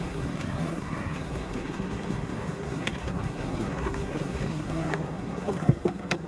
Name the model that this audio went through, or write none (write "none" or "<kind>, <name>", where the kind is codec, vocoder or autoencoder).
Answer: codec, SNAC